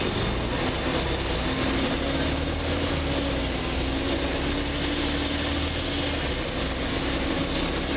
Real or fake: real